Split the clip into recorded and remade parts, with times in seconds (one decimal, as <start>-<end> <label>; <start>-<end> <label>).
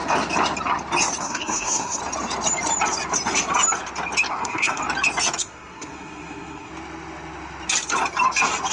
0.0-1.2 recorded; 1.2-2.0 remade; 2.0-4.3 recorded; 4.3-4.8 remade; 4.8-5.4 recorded; 5.4-6.7 remade; 6.7-8.7 recorded